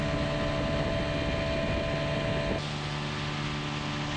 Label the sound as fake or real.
real